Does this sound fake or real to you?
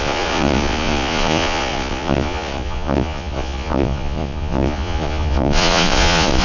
fake